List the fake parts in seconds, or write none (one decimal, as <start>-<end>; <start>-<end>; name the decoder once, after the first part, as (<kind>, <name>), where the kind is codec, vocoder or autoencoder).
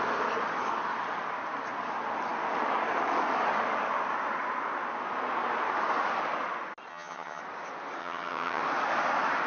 6.9-7.4 (vocoder, HiFi-GAN); 8.0-8.6